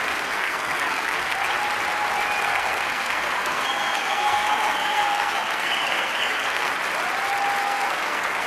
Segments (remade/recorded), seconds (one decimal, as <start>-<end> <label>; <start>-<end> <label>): 0.0-1.6 remade; 1.6-2.4 recorded; 2.4-6.7 remade; 6.7-7.6 recorded; 7.6-8.5 remade